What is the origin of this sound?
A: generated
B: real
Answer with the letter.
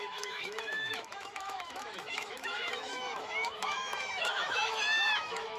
A